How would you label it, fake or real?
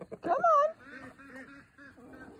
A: real